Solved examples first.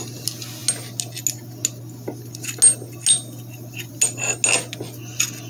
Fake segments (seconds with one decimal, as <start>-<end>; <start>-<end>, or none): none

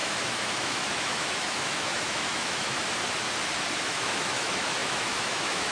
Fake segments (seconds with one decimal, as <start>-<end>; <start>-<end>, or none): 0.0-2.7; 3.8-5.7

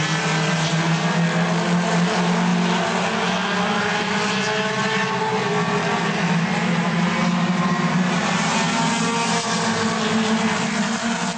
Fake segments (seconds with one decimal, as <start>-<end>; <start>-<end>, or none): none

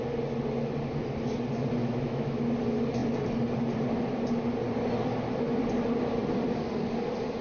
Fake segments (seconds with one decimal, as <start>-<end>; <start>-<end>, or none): 1.8-2.4